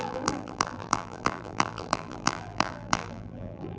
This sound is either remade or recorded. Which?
remade